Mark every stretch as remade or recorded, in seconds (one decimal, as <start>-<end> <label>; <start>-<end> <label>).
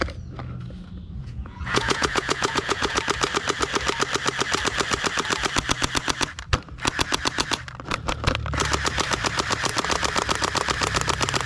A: 0.0-1.2 recorded; 1.2-3.0 remade; 3.0-11.5 recorded